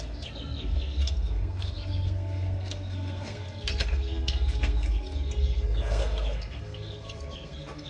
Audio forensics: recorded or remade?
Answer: remade